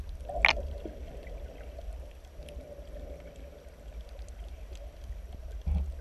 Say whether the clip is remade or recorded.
recorded